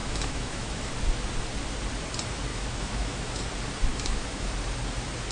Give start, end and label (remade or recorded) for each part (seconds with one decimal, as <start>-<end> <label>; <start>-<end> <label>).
0.0-0.9 remade; 0.9-2.5 recorded; 2.5-3.4 remade; 3.4-3.9 recorded; 3.9-4.5 remade; 4.5-5.3 recorded